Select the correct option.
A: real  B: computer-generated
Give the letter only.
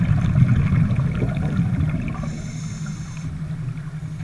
A